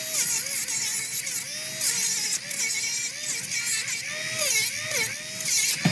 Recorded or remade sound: recorded